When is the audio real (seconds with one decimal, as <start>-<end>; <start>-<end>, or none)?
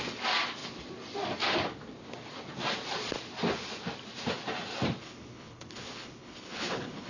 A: 0.0-5.0